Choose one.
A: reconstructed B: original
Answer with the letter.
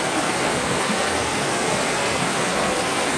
A